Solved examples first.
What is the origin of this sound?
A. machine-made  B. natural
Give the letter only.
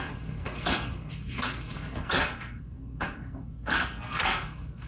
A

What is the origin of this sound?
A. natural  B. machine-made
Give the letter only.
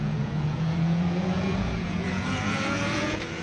B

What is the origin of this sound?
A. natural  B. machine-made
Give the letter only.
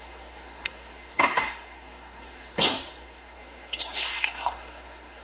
B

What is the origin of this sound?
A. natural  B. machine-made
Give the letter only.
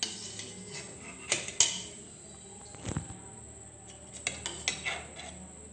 A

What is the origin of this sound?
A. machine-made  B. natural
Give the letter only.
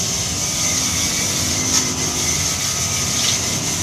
B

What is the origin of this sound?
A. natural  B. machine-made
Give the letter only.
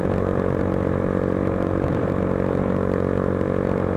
B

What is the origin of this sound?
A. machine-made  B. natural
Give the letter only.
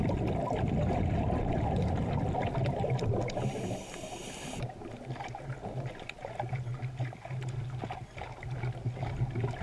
B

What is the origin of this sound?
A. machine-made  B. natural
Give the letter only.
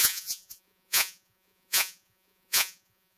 A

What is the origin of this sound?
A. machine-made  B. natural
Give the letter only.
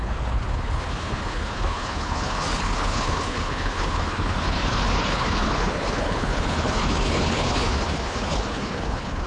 A